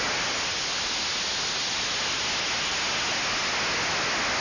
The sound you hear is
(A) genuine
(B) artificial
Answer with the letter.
A